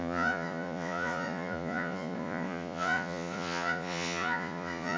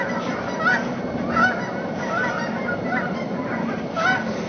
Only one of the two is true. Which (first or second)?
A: second